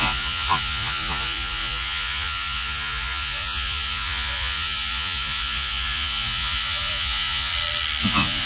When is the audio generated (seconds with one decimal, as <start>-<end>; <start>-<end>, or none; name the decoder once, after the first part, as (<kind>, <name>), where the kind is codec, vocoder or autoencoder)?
0.0-7.5 (vocoder, Vocos); 8.0-8.5